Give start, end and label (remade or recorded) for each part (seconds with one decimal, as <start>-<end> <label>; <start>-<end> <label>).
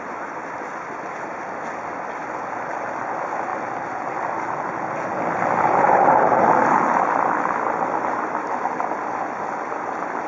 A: 0.0-10.3 recorded